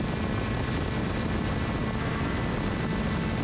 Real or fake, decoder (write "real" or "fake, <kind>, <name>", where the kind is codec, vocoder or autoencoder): real